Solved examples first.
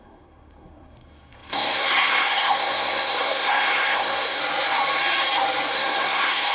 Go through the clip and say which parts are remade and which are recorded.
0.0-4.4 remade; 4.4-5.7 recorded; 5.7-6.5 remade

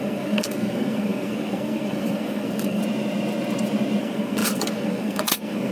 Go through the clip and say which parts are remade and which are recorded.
0.0-2.8 remade; 2.8-4.0 recorded; 4.0-5.7 remade